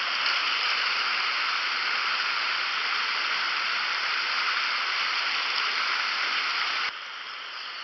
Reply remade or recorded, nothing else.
recorded